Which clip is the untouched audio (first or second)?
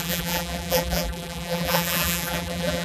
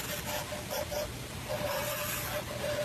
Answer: second